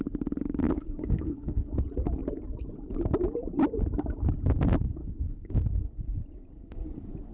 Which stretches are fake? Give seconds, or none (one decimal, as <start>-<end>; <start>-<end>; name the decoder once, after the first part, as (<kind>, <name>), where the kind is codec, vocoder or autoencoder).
0.6-1.7 (codec, SNAC); 5.0-5.5